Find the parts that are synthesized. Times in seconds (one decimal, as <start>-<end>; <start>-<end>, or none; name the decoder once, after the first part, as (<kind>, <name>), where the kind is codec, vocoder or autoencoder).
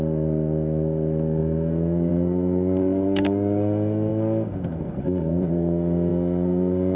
0.0-7.0 (codec, SNAC)